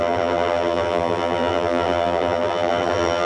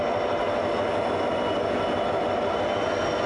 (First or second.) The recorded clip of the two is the second